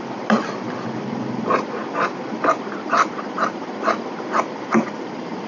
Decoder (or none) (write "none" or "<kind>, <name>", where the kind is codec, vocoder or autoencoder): vocoder, BigVGAN v2